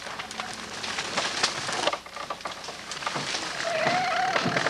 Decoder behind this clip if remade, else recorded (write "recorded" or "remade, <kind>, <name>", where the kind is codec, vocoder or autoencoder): recorded